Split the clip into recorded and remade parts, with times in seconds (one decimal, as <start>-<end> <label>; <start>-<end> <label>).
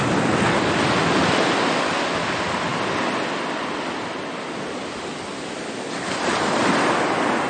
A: 0.0-7.5 recorded